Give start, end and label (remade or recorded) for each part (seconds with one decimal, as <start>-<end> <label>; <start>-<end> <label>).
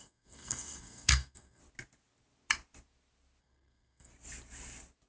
0.0-1.6 remade; 1.6-3.4 recorded; 3.4-4.1 remade; 4.1-5.1 recorded